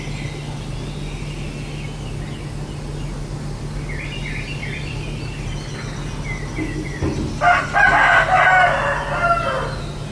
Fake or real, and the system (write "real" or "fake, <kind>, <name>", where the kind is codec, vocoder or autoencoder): real